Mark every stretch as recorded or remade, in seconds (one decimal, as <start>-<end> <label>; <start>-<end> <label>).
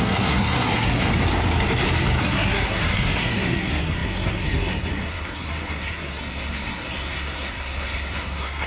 0.0-1.1 remade; 1.1-2.2 recorded; 2.2-8.7 remade